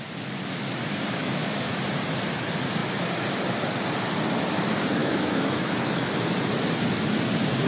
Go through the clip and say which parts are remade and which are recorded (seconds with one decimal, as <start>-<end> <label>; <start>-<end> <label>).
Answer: 0.0-1.2 recorded; 1.2-1.7 remade; 1.7-5.0 recorded; 5.0-6.1 remade; 6.1-7.7 recorded